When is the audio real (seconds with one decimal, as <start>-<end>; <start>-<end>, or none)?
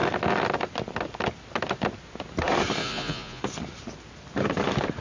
0.0-2.8; 3.4-5.0